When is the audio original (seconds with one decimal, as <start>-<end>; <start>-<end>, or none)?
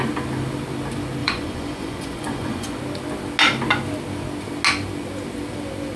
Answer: 0.0-1.2; 2.8-6.0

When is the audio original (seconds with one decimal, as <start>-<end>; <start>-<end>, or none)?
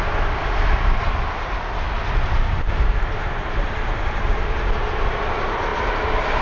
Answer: 0.0-6.4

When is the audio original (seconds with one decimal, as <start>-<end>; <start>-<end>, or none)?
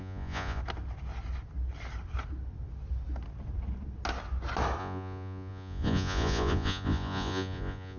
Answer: 0.6-4.8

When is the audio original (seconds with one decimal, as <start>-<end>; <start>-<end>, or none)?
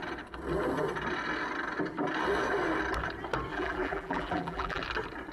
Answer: 0.0-3.5; 4.8-5.3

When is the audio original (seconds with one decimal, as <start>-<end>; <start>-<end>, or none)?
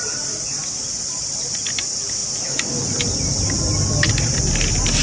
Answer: 0.0-5.0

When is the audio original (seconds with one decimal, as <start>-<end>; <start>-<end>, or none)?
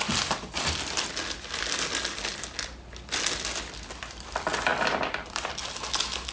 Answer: 0.0-6.3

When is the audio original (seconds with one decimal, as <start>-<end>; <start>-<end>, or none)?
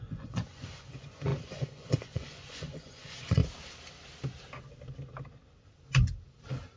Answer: 3.4-6.8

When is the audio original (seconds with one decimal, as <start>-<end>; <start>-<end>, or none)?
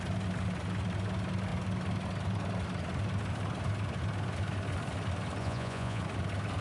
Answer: 0.0-5.4; 6.0-6.6